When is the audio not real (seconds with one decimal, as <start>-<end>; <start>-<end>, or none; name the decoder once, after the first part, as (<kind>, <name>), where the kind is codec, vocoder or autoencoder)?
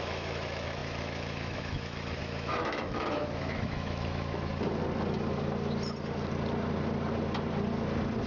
0.0-4.5 (autoencoder, DAC-VAE)